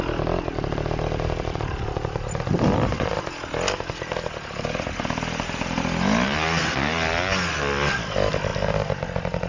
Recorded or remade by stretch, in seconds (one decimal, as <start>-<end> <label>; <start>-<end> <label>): 0.0-9.5 recorded